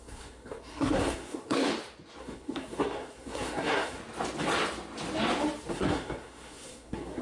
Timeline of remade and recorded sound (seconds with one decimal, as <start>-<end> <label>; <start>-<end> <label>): 0.0-1.7 remade; 1.7-2.2 recorded; 2.2-4.0 remade; 4.0-5.7 recorded; 5.7-7.2 remade